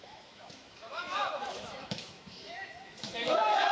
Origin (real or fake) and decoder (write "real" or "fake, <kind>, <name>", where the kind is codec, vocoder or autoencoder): fake, autoencoder, DAC-VAE